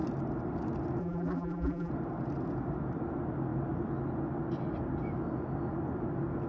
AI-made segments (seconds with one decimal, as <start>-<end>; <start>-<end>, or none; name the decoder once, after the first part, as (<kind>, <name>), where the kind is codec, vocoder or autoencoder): 1.0-1.9 (vocoder, BigVGAN v2)